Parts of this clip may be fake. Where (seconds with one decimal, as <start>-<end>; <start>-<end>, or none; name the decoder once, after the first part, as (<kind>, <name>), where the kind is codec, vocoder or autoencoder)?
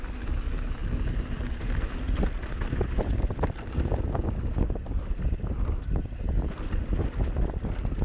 none